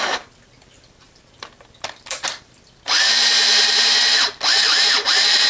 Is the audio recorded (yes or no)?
no